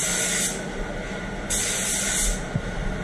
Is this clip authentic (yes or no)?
yes